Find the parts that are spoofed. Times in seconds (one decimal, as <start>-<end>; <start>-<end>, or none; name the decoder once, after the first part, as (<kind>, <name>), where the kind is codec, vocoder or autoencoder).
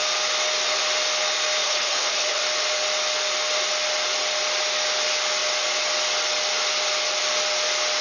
1.6-2.4 (codec, HILCodec)